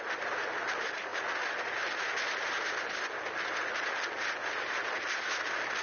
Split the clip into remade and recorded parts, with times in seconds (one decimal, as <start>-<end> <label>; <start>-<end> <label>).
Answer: 0.0-5.8 recorded